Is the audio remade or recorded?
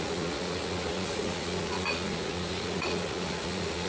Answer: remade